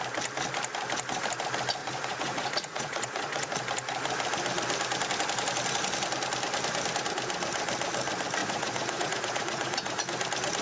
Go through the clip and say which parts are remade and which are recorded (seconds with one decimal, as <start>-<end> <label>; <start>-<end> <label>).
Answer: 0.0-1.8 recorded; 1.8-3.5 remade; 3.5-8.4 recorded; 8.4-10.0 remade; 10.0-10.6 recorded